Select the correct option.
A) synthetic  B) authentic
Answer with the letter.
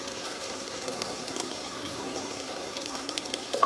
A